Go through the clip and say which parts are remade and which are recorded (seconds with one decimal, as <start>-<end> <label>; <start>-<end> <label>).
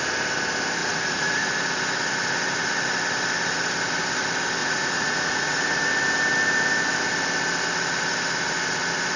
0.0-0.8 recorded; 0.8-1.4 remade; 1.4-4.6 recorded; 4.6-5.9 remade; 5.9-9.2 recorded